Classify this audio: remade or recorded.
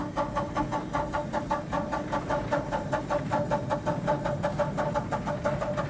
recorded